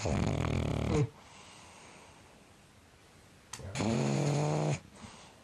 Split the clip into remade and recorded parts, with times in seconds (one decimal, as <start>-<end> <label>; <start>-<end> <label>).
0.0-5.4 recorded